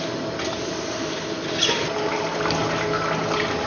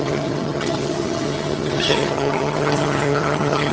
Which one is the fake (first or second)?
second